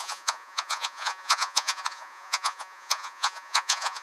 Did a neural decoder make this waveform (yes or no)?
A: yes